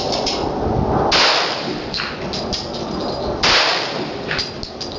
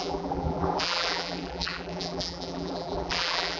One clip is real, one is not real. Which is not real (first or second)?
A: second